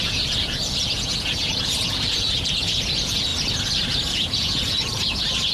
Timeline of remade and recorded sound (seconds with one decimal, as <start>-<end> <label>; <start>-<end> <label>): 0.0-3.3 remade; 3.3-4.1 recorded; 4.1-5.5 remade